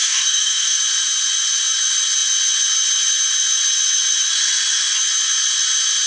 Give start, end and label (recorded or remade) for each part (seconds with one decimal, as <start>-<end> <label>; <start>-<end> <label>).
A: 0.0-0.8 remade; 0.8-6.1 recorded